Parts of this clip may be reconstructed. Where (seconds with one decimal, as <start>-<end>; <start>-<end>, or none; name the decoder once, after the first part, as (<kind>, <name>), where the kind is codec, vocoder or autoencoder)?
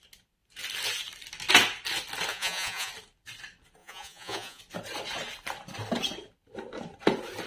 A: 2.3-2.9 (vocoder, Vocos); 3.8-4.6